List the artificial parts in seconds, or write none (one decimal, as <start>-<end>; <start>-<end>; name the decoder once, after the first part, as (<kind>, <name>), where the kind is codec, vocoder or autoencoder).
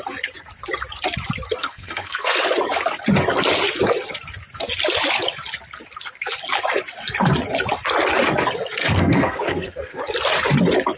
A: 1.6-2.4 (codec, SNAC); 8.8-10.0